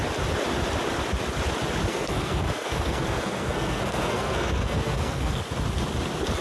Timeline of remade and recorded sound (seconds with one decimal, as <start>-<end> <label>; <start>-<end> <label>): 0.0-1.9 recorded; 1.9-5.4 remade; 5.4-6.4 recorded